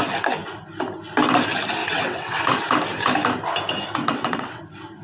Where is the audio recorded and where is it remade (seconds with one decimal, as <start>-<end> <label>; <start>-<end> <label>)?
0.0-1.8 recorded; 1.8-2.4 remade; 2.4-4.0 recorded; 4.0-4.6 remade; 4.6-5.0 recorded